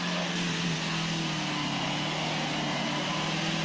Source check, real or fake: real